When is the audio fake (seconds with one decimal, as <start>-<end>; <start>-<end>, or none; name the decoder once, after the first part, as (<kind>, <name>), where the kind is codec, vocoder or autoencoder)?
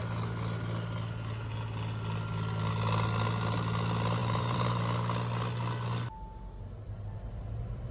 4.2-4.8 (vocoder, BigVGAN v2)